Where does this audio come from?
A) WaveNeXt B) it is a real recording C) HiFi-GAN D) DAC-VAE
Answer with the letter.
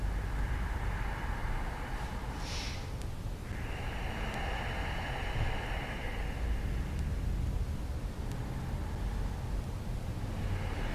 B